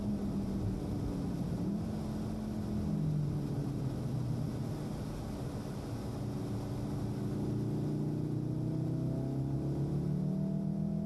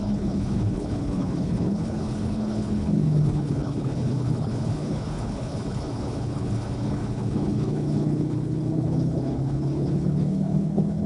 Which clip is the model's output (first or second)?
second